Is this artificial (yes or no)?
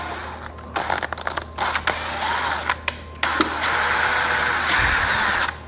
no